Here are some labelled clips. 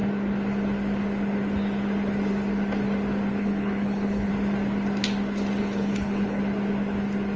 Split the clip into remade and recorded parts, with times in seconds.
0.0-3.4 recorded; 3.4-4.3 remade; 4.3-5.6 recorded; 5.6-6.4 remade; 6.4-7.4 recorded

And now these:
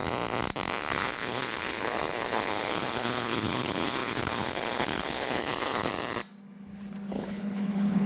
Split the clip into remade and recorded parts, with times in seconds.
0.0-0.8 recorded; 0.8-5.9 remade; 5.9-7.1 recorded; 7.1-8.1 remade

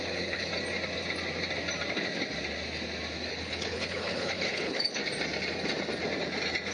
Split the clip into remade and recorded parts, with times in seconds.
0.0-0.5 remade; 0.5-3.3 recorded; 3.3-5.0 remade; 5.0-6.7 recorded

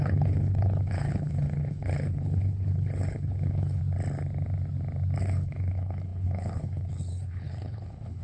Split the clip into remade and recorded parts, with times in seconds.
0.0-3.8 remade; 3.8-5.2 recorded; 5.2-8.2 remade

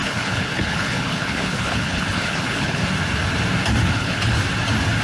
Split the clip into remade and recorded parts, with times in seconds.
0.0-2.8 remade; 2.8-3.9 recorded; 3.9-4.4 remade; 4.4-5.0 recorded

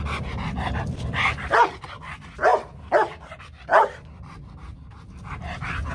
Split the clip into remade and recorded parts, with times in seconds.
0.0-5.9 recorded

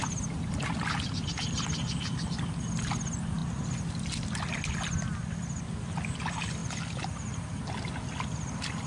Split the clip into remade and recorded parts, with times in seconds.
0.0-8.9 recorded

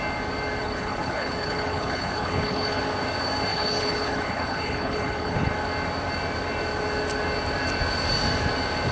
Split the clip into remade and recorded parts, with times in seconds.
0.0-0.6 recorded; 0.6-2.8 remade; 2.8-3.5 recorded; 3.5-5.5 remade; 5.5-8.9 recorded